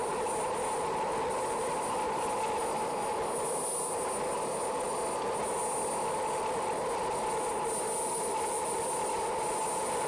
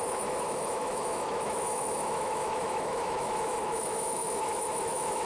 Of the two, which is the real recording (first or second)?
first